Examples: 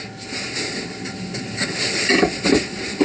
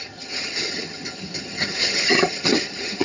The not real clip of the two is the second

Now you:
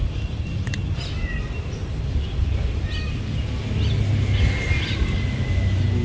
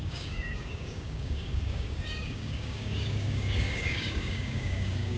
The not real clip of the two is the second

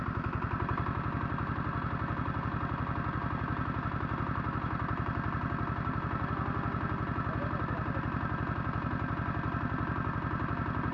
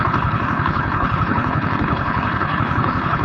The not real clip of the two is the second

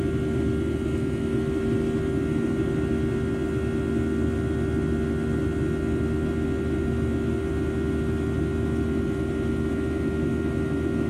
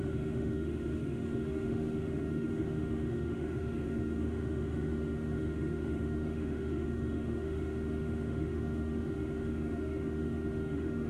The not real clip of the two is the second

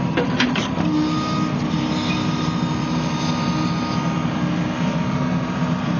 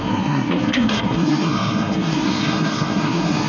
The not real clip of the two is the second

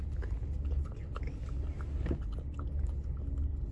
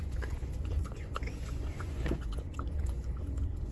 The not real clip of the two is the second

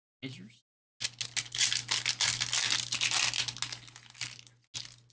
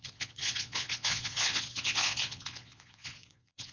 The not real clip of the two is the second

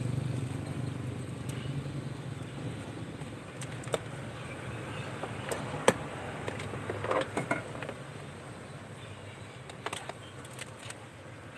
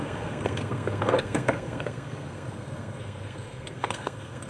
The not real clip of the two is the second